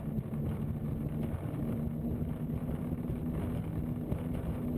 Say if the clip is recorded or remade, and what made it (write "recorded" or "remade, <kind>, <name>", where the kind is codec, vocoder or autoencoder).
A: recorded